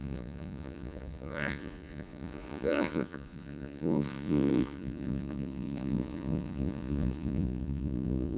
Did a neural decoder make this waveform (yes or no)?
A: yes